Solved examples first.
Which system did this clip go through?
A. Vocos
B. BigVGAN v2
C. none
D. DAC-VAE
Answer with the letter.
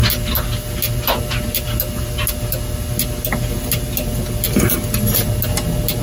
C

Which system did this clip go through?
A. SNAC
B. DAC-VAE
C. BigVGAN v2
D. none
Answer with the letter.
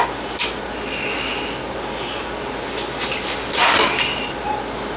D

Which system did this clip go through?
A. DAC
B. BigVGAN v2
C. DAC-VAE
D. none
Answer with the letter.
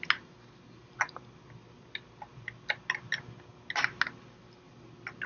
D